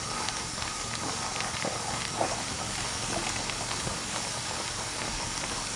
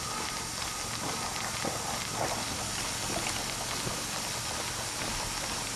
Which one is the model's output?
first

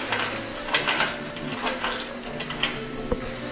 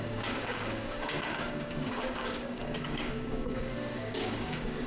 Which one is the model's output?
second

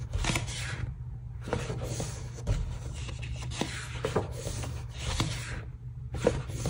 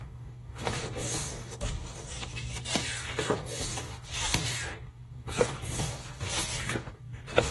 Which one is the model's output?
second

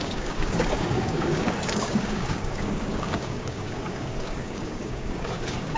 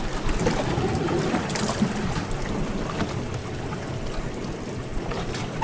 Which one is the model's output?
first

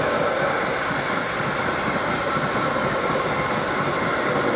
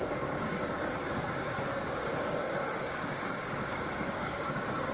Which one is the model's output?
second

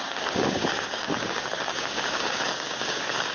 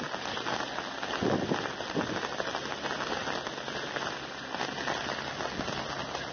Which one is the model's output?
first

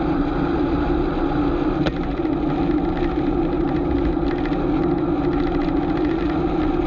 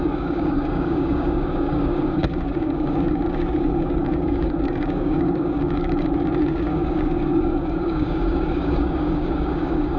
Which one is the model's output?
second